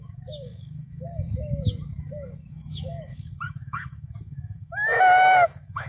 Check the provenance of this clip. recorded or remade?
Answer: remade